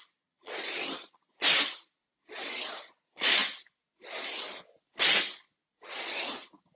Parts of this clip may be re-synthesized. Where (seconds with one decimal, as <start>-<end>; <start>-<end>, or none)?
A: 0.0-2.0; 2.9-3.4; 6.0-6.8